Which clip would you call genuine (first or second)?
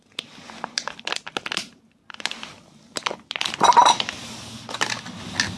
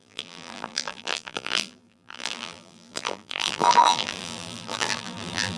first